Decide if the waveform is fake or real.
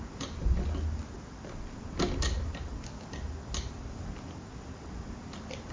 real